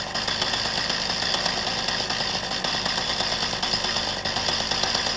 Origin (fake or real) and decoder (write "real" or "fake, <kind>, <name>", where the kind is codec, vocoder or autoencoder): real